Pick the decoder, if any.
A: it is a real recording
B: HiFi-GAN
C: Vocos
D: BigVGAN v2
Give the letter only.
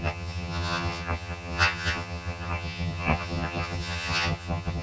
B